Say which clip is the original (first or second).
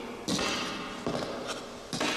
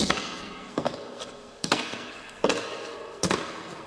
first